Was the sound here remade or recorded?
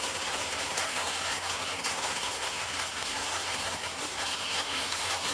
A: remade